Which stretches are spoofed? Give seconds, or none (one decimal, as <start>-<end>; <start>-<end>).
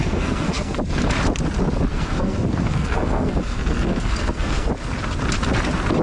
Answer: 0.0-0.8; 1.9-4.7